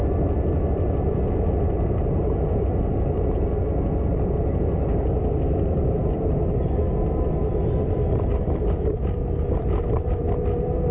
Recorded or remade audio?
recorded